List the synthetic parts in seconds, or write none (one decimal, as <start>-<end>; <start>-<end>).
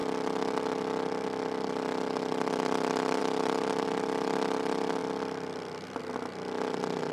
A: none